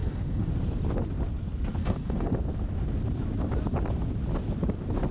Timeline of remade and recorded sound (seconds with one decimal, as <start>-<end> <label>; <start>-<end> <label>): 0.0-0.5 remade; 0.5-1.8 recorded; 1.8-2.3 remade; 2.3-5.1 recorded